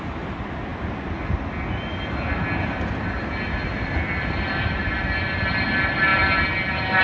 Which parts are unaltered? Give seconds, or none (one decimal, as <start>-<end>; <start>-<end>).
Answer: 0.0-7.0